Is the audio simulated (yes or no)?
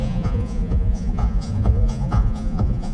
yes